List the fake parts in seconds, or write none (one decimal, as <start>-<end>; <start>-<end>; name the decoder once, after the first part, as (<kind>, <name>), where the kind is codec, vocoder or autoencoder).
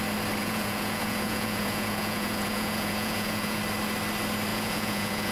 0.4-3.6 (vocoder, Vocos); 4.5-5.3